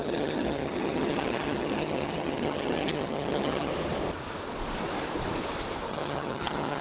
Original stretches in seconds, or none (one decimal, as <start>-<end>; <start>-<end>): 3.7-5.9